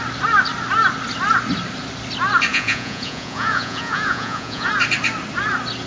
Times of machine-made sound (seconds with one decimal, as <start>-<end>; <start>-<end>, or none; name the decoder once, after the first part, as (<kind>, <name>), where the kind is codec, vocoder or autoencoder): 2.5-4.7 (vocoder, Vocos)